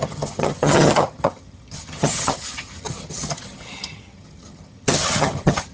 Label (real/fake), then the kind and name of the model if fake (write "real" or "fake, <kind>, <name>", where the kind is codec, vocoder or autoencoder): fake, vocoder, HiFi-GAN